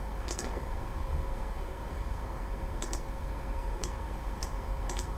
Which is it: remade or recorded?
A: remade